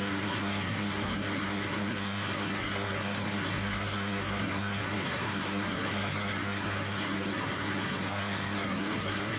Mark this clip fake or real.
fake